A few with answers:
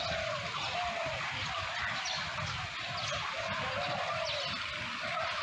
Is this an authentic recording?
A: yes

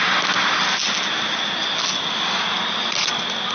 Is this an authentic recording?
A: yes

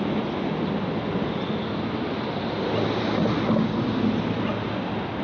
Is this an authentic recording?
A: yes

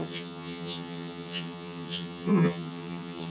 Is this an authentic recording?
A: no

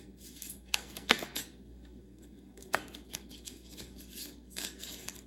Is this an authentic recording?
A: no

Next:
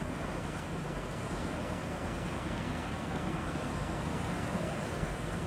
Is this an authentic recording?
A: no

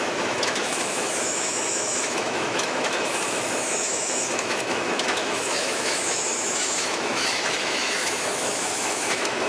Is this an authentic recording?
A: no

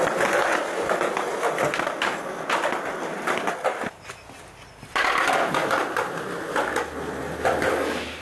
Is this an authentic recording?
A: yes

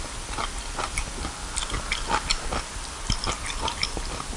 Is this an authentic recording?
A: yes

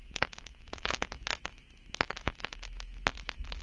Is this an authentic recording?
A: no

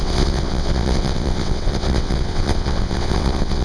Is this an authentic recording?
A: no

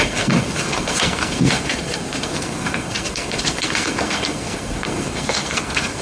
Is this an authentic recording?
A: no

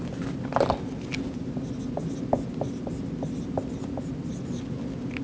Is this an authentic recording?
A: yes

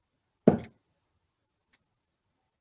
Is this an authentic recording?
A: yes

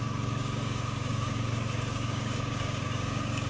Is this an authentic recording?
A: no